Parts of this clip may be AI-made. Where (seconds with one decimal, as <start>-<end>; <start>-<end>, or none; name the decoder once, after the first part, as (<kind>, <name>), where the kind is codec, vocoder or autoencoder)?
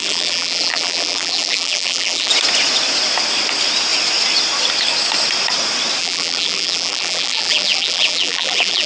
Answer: 0.0-2.3 (vocoder, BigVGAN v2); 6.0-8.9